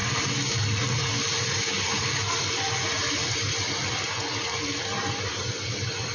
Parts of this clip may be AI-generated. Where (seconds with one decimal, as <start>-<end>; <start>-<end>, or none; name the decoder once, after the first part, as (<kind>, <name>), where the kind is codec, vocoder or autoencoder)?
none